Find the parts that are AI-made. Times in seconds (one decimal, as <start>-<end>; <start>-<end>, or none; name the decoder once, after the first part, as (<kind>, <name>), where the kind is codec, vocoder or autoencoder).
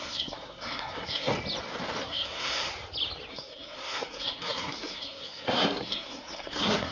0.0-1.3 (codec, SNAC); 2.0-2.7; 3.3-6.9